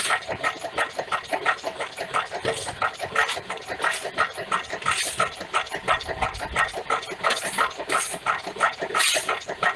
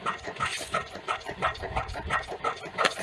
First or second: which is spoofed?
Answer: second